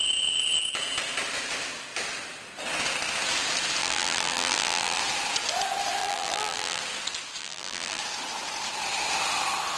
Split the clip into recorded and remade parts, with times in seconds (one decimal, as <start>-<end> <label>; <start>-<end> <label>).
0.0-3.8 recorded; 3.8-5.0 remade; 5.0-6.0 recorded; 6.0-6.8 remade; 6.8-7.4 recorded; 7.4-8.0 remade; 8.0-9.8 recorded